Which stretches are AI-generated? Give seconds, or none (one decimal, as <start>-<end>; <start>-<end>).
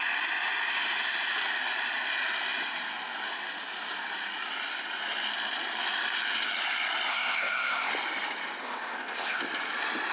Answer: 7.1-7.9; 8.6-9.4